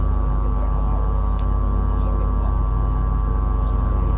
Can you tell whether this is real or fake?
real